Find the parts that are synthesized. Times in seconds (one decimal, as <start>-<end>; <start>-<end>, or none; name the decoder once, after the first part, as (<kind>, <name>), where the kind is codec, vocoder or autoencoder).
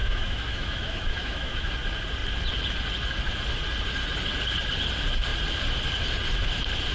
0.0-1.7 (autoencoder, DAC-VAE)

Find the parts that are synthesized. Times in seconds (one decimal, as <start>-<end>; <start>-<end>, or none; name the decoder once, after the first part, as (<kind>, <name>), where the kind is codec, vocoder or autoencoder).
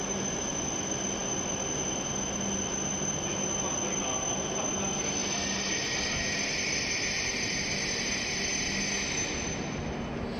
none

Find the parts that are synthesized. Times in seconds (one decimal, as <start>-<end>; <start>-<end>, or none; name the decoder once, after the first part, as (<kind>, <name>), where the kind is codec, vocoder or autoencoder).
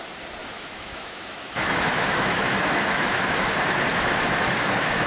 0.4-3.5 (autoencoder, DAC-VAE); 3.9-5.1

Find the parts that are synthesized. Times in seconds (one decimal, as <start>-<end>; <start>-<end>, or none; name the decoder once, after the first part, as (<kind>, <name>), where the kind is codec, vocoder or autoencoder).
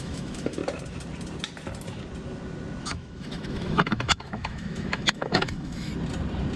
0.0-0.6 (autoencoder, DAC-VAE); 2.8-5.9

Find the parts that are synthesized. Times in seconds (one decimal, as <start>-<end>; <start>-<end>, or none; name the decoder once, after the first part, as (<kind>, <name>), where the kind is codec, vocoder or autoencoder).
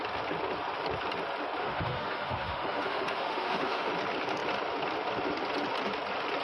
1.6-3.9 (autoencoder, DAC-VAE)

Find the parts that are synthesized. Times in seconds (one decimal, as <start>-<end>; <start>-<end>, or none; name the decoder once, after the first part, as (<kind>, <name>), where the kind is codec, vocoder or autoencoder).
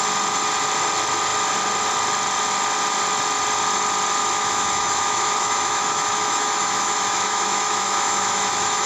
4.2-8.9 (autoencoder, DAC-VAE)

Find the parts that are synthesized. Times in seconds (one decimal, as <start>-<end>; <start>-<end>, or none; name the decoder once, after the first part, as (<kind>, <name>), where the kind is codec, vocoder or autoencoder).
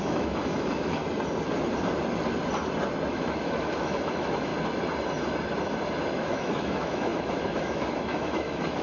0.0-1.0 (autoencoder, DAC-VAE); 3.1-4.5; 6.2-8.8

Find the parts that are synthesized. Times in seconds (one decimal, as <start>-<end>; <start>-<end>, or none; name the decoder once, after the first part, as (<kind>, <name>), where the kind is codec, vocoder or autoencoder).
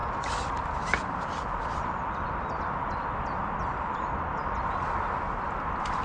none